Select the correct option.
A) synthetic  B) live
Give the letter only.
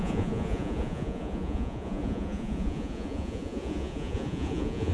A